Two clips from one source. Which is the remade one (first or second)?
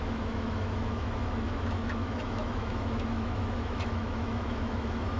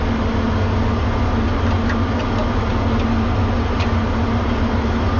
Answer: first